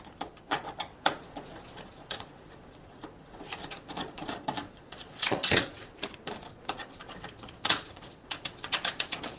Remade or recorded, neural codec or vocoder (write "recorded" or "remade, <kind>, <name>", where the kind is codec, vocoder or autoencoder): remade, vocoder, Vocos